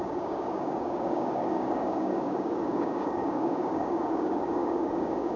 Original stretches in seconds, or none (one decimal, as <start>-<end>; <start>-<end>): none